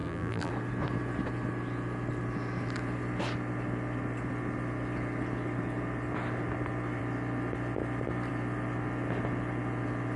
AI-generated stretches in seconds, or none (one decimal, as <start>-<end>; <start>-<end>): 0.0-0.5